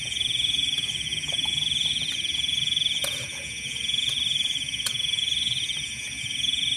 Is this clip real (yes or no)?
no